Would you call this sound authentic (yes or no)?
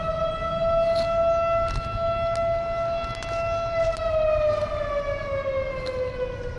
yes